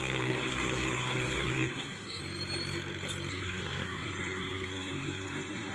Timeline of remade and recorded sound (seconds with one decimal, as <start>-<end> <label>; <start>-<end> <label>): 0.0-2.2 remade; 2.2-3.3 recorded; 3.3-5.7 remade